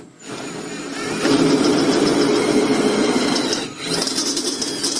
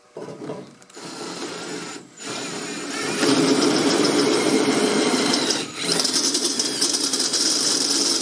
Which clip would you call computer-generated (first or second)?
second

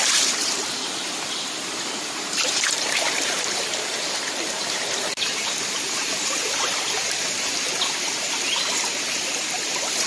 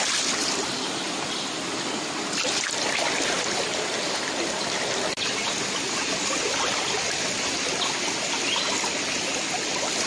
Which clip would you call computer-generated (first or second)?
first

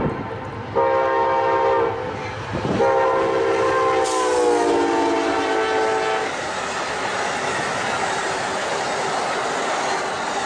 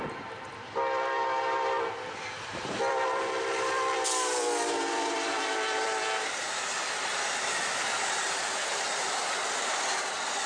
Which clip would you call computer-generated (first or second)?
second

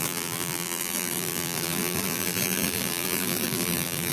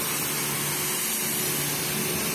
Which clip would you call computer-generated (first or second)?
first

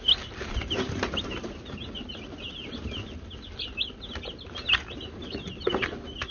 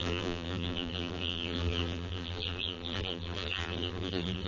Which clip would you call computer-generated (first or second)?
second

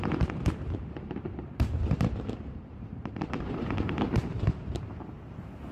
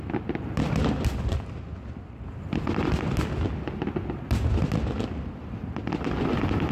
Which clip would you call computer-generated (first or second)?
first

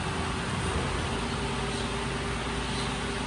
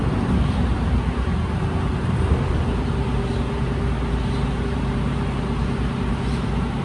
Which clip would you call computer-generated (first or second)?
second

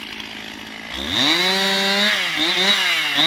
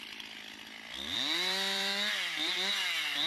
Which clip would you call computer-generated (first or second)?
second